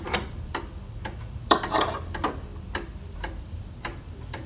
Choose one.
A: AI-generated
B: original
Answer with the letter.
A